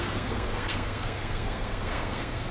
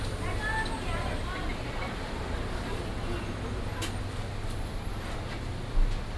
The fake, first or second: first